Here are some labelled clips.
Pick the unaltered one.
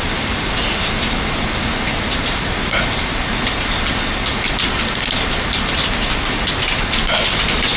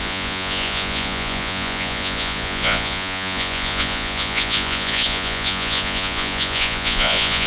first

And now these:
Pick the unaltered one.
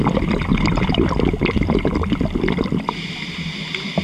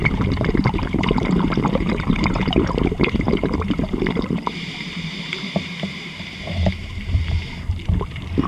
first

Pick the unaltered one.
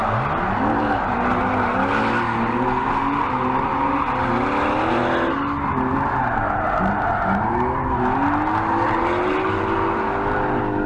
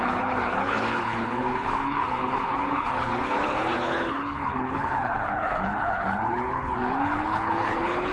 first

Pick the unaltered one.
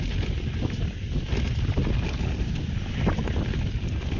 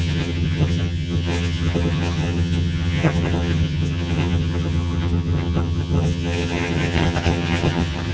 first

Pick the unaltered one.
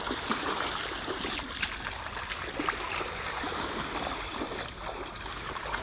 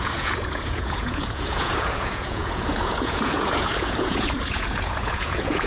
first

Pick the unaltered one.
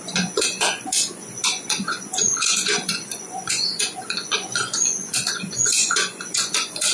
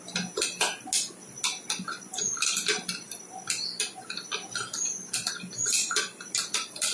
second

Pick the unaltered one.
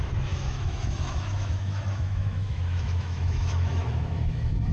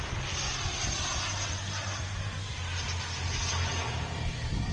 second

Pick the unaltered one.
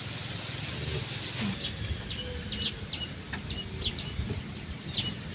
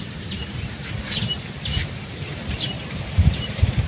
first